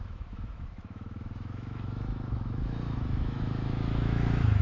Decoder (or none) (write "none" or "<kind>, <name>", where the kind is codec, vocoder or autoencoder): autoencoder, DAC-VAE